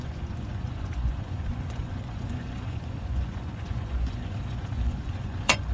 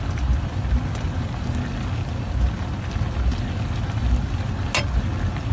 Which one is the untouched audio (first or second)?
second